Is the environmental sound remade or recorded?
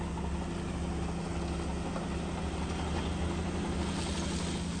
recorded